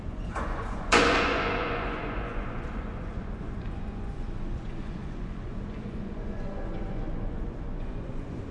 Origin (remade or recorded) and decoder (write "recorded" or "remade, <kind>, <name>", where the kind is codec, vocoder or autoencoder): remade, vocoder, Vocos